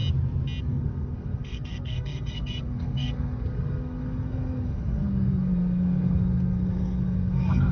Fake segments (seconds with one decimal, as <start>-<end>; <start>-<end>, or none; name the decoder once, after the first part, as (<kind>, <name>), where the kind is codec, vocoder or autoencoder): 0.6-7.7 (codec, SNAC)